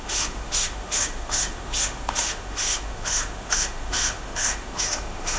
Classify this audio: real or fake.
fake